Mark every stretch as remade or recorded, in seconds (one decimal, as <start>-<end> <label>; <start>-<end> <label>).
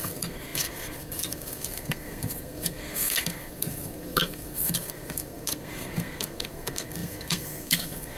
0.0-8.2 remade